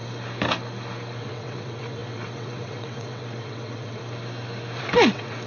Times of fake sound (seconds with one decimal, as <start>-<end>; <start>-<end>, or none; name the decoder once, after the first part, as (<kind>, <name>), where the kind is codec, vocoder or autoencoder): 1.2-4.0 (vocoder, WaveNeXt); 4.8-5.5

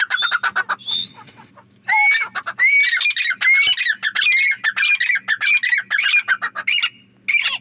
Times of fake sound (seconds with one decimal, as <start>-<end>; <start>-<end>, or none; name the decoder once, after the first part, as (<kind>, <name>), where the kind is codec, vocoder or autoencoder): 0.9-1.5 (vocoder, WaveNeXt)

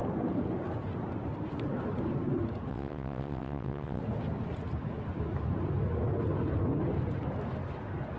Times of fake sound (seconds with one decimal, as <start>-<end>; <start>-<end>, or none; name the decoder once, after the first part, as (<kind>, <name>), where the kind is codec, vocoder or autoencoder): 2.7-4.0 (vocoder, WaveNeXt)